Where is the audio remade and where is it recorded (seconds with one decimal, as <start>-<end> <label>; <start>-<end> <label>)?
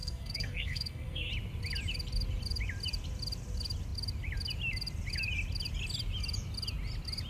0.0-1.3 remade; 1.3-7.3 recorded